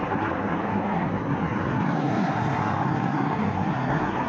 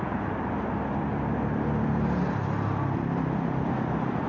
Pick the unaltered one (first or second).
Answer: second